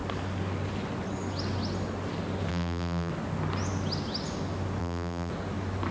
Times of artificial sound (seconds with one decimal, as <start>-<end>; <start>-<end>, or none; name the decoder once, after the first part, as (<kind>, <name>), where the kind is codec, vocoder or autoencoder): 2.5-3.1 (vocoder, BigVGAN v2); 4.8-5.3